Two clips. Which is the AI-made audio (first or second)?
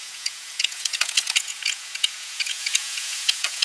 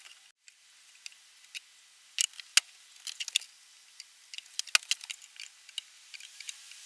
first